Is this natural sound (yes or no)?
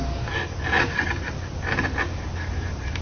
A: yes